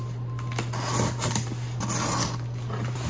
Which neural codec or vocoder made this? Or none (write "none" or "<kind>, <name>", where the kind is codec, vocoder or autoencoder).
none